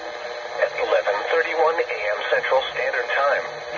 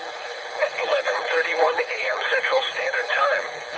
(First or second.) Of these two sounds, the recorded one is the first